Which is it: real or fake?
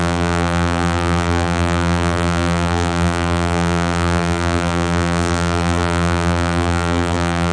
fake